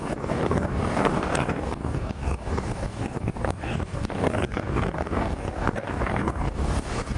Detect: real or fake fake